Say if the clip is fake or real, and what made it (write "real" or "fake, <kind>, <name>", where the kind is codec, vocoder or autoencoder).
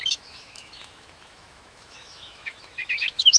fake, autoencoder, DAC-VAE